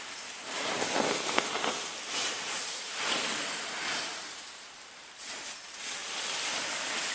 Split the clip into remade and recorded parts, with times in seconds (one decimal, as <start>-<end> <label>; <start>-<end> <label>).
0.0-6.0 remade; 6.0-6.6 recorded; 6.6-7.1 remade